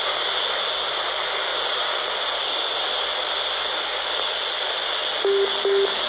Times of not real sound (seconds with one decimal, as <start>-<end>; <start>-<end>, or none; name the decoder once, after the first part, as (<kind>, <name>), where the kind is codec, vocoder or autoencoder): none